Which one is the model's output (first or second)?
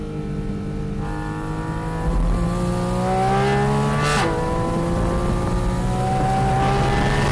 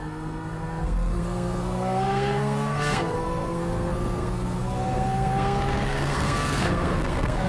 second